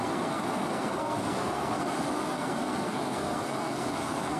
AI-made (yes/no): yes